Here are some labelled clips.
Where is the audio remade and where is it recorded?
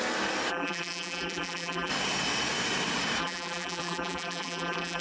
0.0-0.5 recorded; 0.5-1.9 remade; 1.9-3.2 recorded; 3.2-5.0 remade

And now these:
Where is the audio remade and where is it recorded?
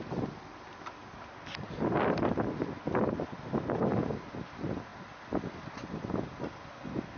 0.0-7.2 recorded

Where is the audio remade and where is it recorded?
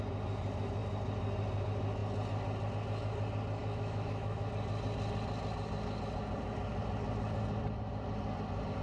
0.0-3.6 recorded; 3.6-4.5 remade; 4.5-8.8 recorded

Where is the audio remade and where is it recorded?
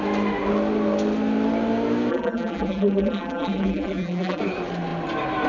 0.0-2.1 recorded; 2.1-4.4 remade; 4.4-5.5 recorded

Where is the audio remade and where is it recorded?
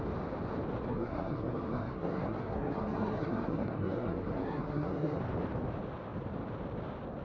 0.0-0.9 recorded; 0.9-5.2 remade; 5.2-7.2 recorded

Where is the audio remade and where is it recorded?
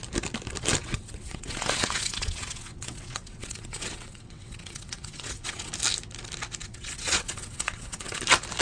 0.0-0.8 recorded; 0.8-5.7 remade; 5.7-6.6 recorded; 6.6-8.2 remade; 8.2-8.6 recorded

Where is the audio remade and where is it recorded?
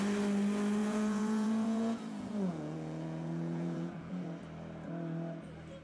0.0-0.8 recorded; 0.8-4.3 remade; 4.3-5.8 recorded